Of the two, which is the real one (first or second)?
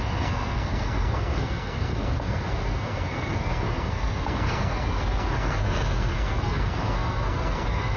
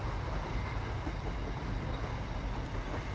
second